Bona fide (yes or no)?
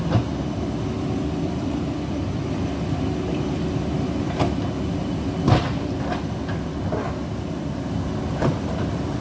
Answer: yes